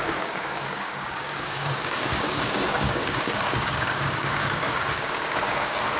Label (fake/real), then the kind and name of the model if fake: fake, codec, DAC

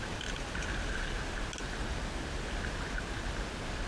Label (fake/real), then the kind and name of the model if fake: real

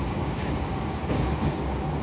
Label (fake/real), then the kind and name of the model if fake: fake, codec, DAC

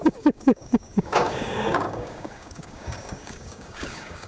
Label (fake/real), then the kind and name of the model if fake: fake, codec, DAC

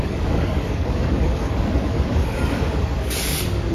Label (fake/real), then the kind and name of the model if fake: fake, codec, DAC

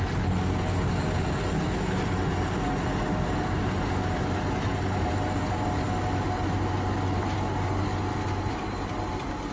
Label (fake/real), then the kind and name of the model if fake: real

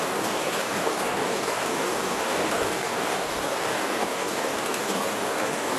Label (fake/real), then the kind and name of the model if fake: fake, codec, DAC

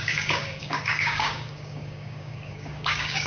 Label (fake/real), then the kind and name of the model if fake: fake, codec, DAC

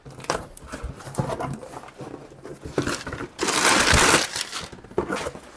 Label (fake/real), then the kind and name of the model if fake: real